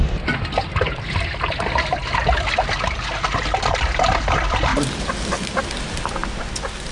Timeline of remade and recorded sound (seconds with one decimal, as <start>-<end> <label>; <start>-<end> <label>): 0.0-2.0 remade; 2.0-3.4 recorded; 3.4-4.7 remade; 4.7-5.6 recorded; 5.6-6.2 remade; 6.2-6.9 recorded

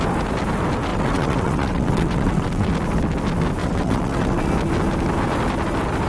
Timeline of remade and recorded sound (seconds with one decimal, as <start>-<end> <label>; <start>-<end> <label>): 0.0-0.9 recorded; 0.9-2.7 remade; 2.7-3.6 recorded; 3.6-4.5 remade; 4.5-6.1 recorded